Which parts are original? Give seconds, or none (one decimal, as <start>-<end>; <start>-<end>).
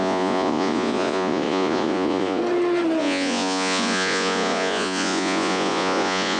2.4-3.0